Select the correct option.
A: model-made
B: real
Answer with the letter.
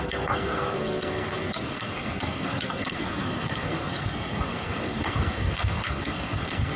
A